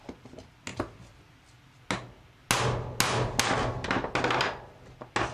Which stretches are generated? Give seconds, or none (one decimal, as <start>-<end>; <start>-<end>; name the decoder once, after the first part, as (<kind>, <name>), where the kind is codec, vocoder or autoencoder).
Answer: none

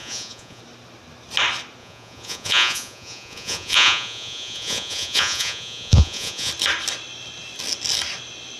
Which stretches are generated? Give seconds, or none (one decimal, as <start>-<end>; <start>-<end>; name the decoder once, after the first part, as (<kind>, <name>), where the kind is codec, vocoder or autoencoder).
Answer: 0.0-0.6 (vocoder, Vocos); 1.8-6.5

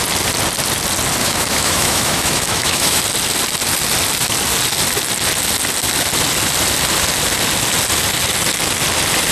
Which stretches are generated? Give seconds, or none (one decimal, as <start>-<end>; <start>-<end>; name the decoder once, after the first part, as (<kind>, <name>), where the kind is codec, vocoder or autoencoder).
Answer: 1.2-3.0 (autoencoder, DAC-VAE)

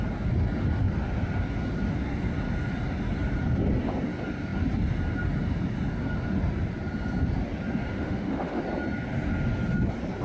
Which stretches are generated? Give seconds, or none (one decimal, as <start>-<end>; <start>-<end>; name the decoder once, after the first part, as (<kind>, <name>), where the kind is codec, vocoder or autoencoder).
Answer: 7.9-8.6 (autoencoder, DAC-VAE)

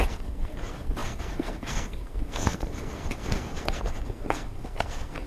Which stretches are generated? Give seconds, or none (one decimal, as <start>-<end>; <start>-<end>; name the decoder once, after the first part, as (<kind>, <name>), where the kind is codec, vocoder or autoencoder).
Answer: 0.0-5.3 (codec, SNAC)